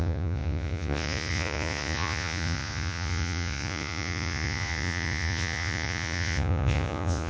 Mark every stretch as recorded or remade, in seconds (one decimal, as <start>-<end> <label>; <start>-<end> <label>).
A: 0.0-7.3 remade